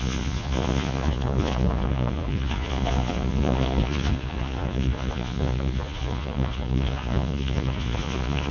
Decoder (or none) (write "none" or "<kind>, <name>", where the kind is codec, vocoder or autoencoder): vocoder, Vocos